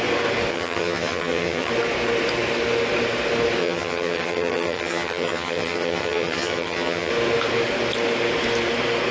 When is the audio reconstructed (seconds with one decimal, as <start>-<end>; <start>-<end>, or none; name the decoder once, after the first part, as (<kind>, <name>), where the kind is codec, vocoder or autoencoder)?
0.5-1.7 (vocoder, HiFi-GAN); 3.6-7.1

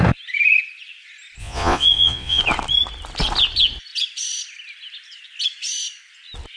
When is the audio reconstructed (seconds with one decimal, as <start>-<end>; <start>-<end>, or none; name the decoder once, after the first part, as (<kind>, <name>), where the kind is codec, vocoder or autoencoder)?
1.4-2.4 (vocoder, Vocos)